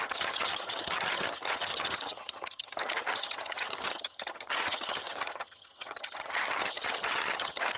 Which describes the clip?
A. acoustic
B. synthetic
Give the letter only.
B